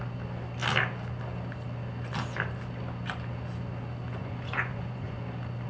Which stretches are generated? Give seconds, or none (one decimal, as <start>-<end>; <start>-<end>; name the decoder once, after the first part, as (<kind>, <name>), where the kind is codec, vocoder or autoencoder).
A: 4.2-5.2 (vocoder, Vocos)